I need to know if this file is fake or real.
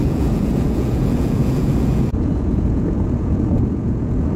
fake